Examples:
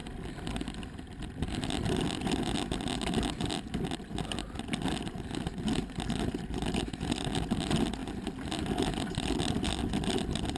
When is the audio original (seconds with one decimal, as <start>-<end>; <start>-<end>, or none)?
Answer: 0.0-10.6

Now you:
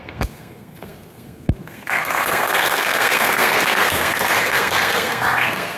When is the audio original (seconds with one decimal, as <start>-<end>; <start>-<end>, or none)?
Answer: none

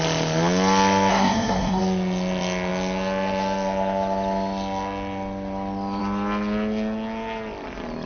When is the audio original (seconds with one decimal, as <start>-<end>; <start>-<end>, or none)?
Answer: 0.0-1.1; 1.8-8.1